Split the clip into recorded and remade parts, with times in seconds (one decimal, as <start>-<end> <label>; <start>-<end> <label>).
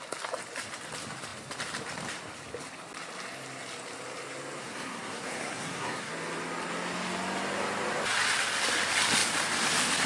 0.0-4.6 recorded; 4.6-6.1 remade; 6.1-10.1 recorded